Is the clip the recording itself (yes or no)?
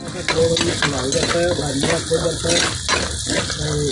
yes